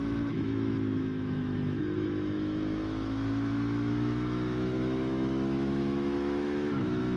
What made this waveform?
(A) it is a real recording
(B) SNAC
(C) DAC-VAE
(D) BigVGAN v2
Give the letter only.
C